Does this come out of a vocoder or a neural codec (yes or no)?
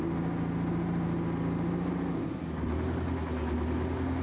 no